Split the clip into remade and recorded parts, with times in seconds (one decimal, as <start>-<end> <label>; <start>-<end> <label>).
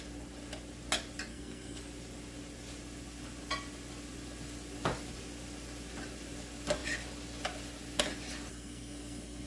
0.0-1.3 recorded; 1.3-1.8 remade; 1.8-8.5 recorded; 8.5-9.5 remade